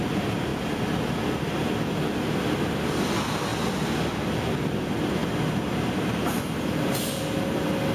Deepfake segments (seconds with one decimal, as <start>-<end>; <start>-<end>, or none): none